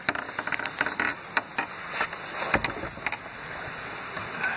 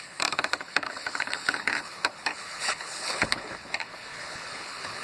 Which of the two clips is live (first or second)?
first